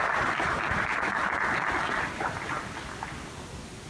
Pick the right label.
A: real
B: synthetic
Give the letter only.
A